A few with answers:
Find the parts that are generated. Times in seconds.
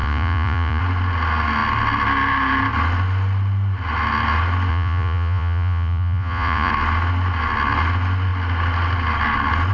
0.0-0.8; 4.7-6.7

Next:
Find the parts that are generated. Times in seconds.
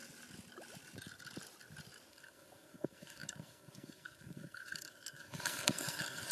2.1-6.3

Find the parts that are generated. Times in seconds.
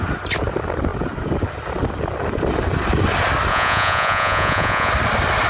3.5-4.9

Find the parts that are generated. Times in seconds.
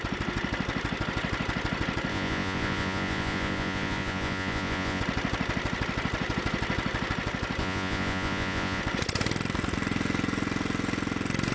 2.1-5.0; 7.6-8.8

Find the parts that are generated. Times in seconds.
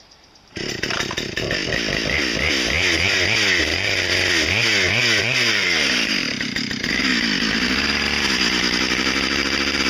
0.0-1.6; 3.6-4.1; 5.2-7.1; 8.9-9.9